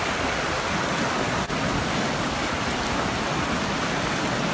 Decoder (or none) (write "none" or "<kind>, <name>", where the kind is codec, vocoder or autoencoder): none